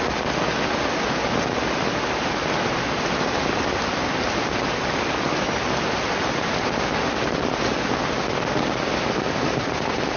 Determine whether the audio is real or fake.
real